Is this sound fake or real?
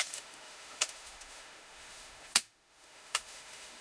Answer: fake